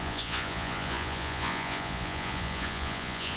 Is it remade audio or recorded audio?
remade